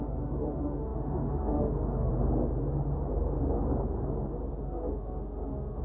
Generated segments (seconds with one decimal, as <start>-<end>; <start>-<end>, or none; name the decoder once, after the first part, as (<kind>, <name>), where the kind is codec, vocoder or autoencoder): 0.0-2.1 (autoencoder, DAC-VAE); 4.6-5.8